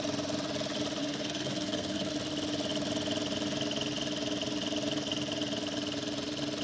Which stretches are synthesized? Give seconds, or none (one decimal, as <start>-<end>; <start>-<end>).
1.0-2.1